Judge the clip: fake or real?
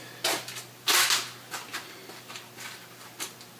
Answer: real